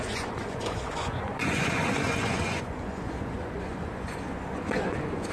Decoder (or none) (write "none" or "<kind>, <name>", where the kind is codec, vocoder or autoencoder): vocoder, Vocos